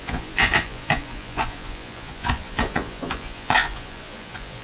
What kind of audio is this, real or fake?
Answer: fake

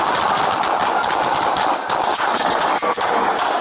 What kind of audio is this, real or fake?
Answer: real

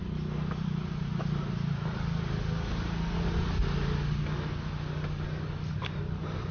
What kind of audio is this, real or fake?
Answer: real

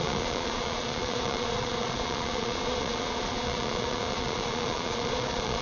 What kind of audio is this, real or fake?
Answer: fake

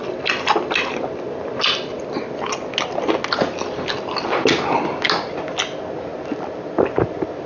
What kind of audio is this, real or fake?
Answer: real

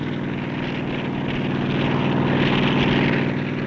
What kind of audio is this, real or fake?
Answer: real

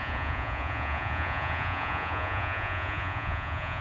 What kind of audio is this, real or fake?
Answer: fake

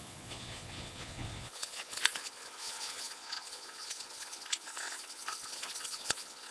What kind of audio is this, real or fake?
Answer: fake